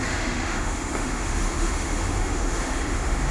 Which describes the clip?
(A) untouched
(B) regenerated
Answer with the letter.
B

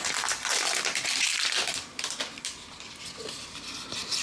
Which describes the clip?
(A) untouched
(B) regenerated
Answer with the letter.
B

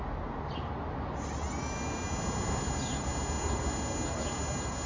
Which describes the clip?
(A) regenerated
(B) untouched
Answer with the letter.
B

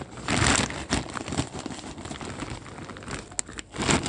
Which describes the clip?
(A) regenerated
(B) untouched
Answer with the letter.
B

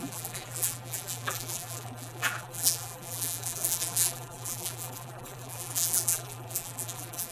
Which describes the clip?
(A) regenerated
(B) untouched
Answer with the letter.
A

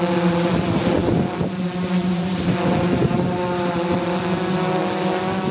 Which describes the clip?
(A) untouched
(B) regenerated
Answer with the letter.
A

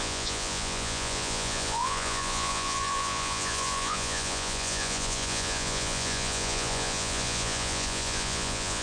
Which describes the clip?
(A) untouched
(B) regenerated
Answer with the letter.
B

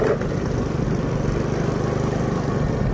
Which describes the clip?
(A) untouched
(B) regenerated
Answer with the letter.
A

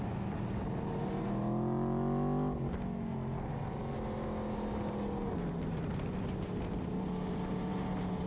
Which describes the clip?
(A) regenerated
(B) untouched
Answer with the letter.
B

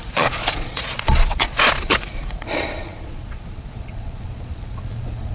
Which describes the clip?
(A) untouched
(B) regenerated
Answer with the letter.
B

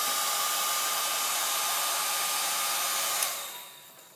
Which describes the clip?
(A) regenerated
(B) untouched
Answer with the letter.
B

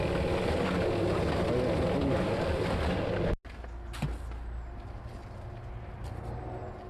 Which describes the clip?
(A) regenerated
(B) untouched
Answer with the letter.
B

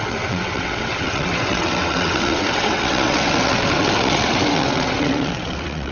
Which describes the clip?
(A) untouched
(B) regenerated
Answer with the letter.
B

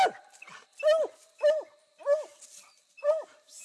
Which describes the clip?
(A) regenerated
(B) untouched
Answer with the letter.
B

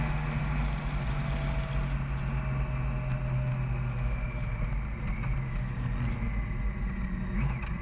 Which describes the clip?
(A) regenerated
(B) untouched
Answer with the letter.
B